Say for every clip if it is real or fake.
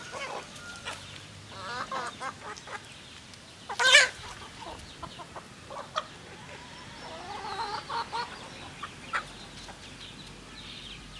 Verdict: real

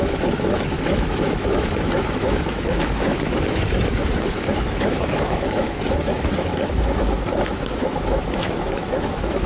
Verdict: fake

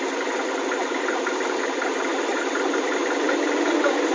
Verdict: real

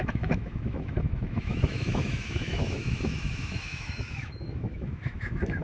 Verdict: fake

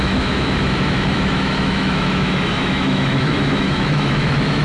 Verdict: fake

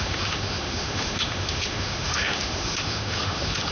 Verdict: fake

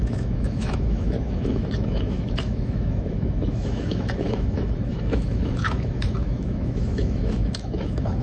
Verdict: fake